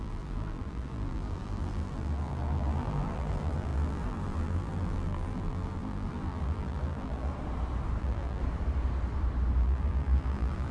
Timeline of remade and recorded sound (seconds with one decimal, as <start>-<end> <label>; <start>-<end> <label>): 0.0-7.3 remade; 7.3-8.0 recorded; 8.0-8.4 remade; 8.4-9.6 recorded; 9.6-10.7 remade